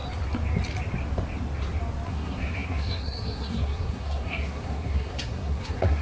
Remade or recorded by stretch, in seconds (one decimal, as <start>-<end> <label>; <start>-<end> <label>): 0.0-2.1 recorded; 2.1-6.0 remade